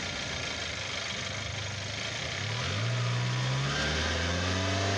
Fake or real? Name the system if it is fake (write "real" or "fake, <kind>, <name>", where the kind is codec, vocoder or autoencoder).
real